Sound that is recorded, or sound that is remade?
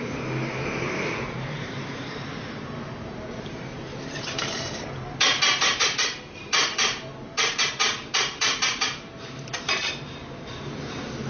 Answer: remade